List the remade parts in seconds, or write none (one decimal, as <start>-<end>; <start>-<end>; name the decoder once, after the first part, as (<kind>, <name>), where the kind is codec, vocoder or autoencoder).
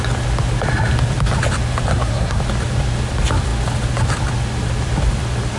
1.9-2.4 (codec, SNAC)